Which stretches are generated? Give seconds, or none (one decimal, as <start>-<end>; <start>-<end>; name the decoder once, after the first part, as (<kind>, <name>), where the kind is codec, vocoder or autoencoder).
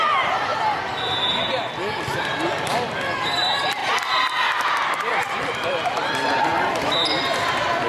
0.0-0.5 (vocoder, BigVGAN v2); 2.2-3.8; 5.1-6.5; 7.2-7.9